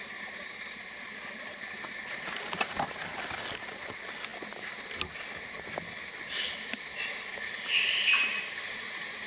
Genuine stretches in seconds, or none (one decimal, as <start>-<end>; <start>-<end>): 0.0-9.3